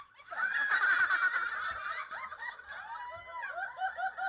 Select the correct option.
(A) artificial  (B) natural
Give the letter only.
B